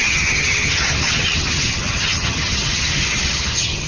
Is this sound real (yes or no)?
no